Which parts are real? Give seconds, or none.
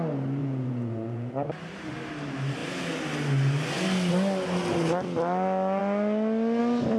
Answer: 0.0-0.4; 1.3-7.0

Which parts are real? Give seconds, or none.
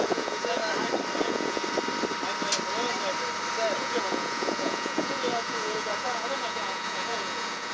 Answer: 0.6-1.2; 1.6-3.8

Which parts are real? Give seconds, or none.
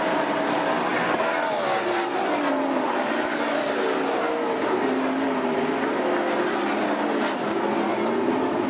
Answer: 0.0-8.7